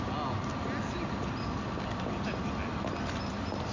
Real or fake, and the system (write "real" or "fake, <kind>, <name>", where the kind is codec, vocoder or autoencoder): real